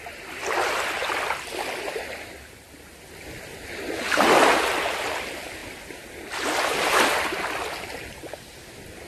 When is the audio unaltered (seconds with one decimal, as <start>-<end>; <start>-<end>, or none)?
0.0-9.1